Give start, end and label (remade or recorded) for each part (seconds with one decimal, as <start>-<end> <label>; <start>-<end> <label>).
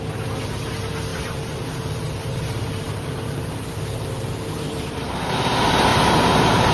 0.0-1.1 recorded; 1.1-5.1 remade; 5.1-5.9 recorded; 5.9-6.7 remade